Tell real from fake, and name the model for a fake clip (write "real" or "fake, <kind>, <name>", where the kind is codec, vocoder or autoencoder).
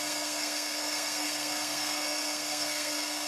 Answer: fake, codec, SNAC